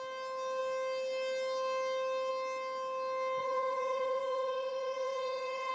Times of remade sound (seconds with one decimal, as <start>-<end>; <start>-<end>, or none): 3.4-5.7